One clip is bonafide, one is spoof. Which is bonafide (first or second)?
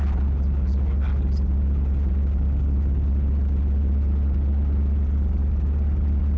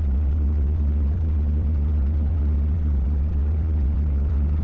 first